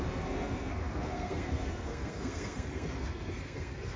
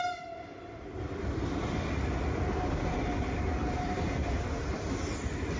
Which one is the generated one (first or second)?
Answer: first